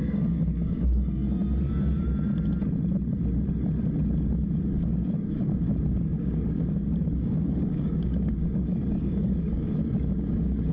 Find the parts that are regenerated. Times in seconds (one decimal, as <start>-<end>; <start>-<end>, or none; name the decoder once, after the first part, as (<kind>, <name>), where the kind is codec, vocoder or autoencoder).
0.0-1.2 (codec, DAC); 4.7-10.7